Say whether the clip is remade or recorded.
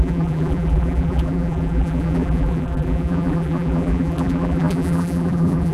remade